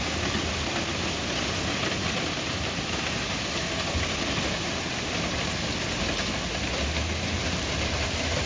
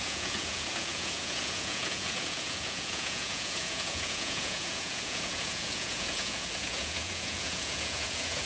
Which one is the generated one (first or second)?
second